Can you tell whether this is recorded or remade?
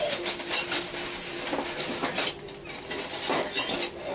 recorded